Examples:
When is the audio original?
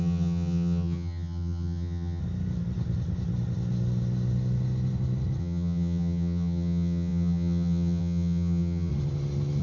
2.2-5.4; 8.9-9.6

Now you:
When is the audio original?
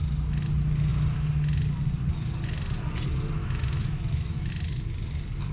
0.0-3.4; 4.5-5.5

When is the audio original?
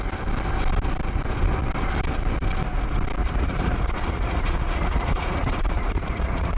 0.0-3.2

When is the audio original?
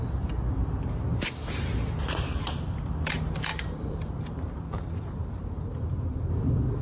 0.0-1.1; 2.6-3.5; 6.3-6.8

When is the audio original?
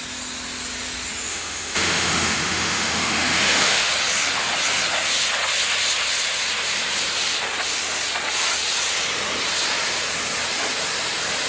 0.0-1.3; 3.9-11.5